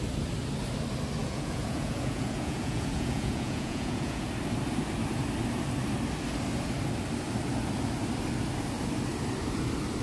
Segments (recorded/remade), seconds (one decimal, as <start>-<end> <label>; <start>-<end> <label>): 0.0-1.2 recorded; 1.2-4.3 remade; 4.3-10.0 recorded